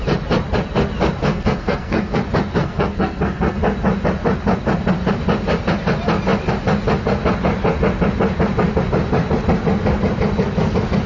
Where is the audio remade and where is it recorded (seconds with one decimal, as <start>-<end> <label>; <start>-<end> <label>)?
0.0-1.3 recorded; 1.3-2.2 remade; 2.2-2.6 recorded; 2.6-3.6 remade; 3.6-11.1 recorded